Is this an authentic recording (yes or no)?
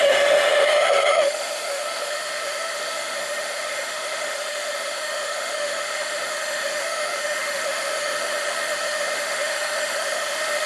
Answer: no